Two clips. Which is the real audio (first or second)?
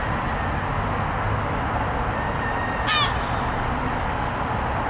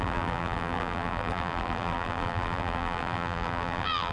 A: first